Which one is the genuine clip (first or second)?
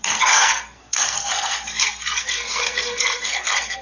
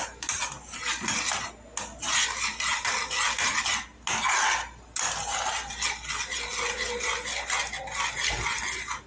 second